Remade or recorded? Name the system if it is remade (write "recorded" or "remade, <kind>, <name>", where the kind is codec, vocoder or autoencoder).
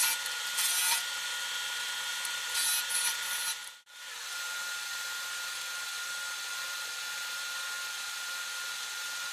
recorded